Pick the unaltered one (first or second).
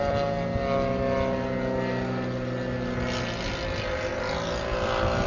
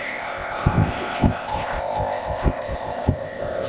first